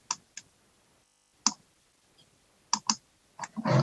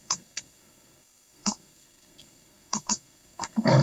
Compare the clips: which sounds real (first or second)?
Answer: first